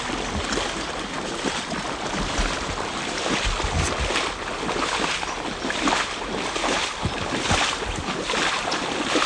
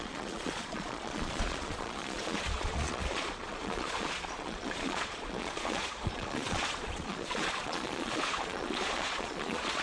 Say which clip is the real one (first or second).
first